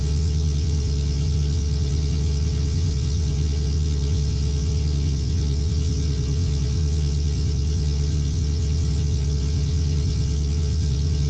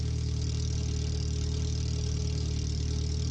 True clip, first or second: second